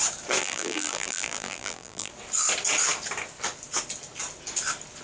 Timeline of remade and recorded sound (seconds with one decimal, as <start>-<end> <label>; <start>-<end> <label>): 0.0-0.4 recorded; 0.4-2.1 remade; 2.1-5.0 recorded